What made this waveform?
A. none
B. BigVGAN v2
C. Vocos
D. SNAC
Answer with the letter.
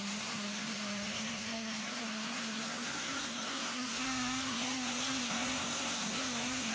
D